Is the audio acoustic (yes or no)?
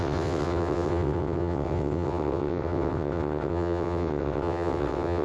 no